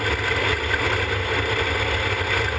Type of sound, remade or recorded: recorded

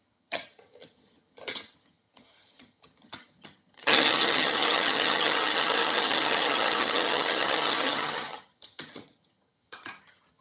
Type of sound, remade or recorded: remade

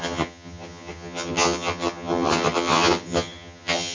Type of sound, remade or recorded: remade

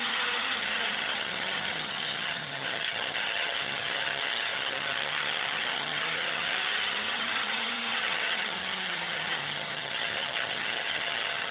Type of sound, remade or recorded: remade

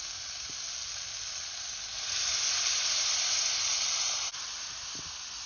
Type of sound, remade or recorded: recorded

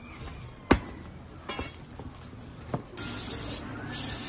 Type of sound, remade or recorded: recorded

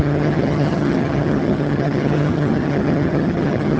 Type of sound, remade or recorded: remade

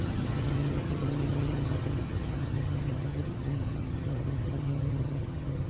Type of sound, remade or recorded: remade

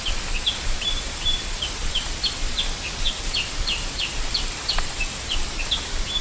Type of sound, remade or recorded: recorded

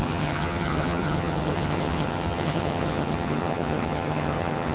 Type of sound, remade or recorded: remade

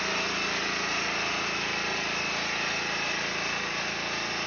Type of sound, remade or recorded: recorded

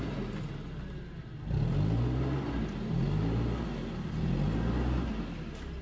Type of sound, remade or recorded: recorded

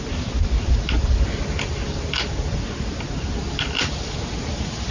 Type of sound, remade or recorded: recorded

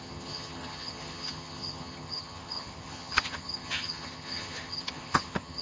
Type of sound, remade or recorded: remade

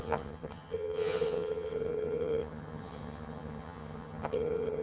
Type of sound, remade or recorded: remade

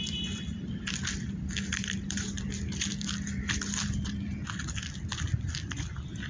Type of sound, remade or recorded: recorded